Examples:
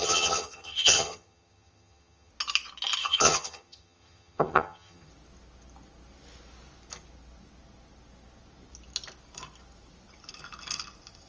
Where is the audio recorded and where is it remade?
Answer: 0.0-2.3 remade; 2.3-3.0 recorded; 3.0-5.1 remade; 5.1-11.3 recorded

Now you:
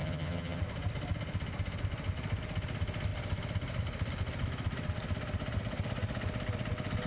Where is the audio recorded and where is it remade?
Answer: 0.0-0.6 remade; 0.6-7.1 recorded